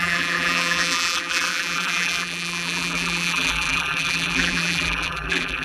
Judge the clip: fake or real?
fake